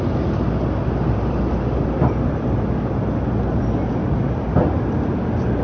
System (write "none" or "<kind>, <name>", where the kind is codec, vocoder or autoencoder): none